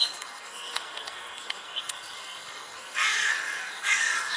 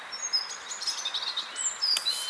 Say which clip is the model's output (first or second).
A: first